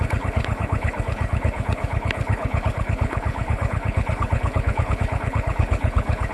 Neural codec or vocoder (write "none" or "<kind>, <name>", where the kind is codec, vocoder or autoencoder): codec, HILCodec